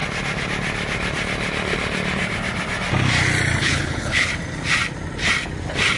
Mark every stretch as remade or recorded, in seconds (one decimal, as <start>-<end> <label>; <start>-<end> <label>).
0.0-3.6 recorded; 3.6-4.3 remade; 4.3-6.0 recorded